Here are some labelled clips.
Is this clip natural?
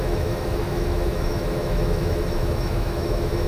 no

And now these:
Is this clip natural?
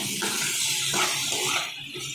yes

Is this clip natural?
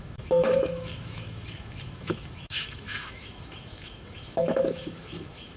no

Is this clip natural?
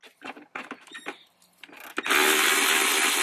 yes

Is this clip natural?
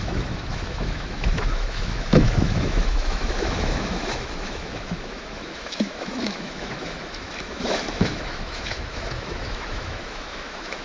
no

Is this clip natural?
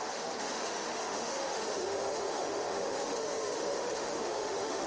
no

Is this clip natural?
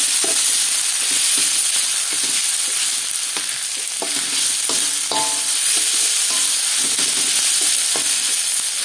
yes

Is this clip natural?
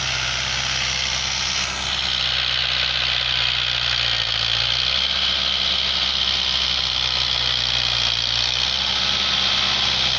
yes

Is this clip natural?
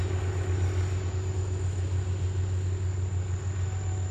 yes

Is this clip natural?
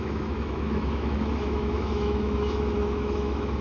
no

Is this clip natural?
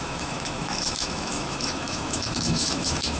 no